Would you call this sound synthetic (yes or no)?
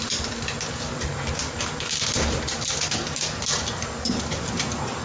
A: no